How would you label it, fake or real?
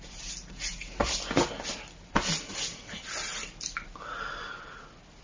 real